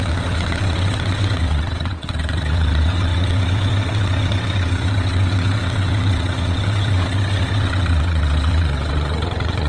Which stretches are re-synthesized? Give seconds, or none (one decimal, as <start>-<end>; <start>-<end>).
0.0-9.7

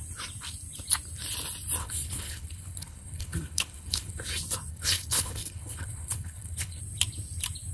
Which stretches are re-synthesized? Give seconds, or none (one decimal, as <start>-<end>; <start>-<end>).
1.8-4.2; 4.7-6.8

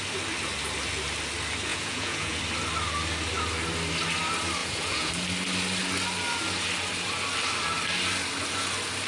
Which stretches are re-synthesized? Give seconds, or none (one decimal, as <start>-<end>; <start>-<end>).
1.7-2.4; 4.6-5.1

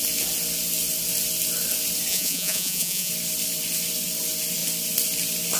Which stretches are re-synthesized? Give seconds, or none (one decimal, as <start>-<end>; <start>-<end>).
2.1-3.1